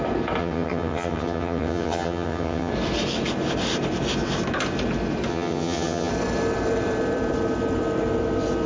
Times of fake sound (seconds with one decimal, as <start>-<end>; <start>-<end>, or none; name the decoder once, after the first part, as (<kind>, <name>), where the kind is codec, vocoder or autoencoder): 0.4-2.7 (vocoder, HiFi-GAN); 5.3-6.1